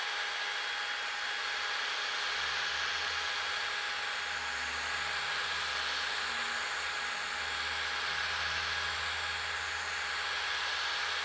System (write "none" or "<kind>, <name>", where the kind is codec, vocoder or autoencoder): none